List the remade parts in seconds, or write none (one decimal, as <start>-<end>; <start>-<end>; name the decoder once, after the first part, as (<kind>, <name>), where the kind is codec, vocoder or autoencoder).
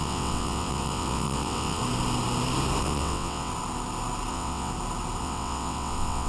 0.0-1.8 (vocoder, WaveNeXt); 2.8-3.5; 4.3-4.7; 5.2-6.3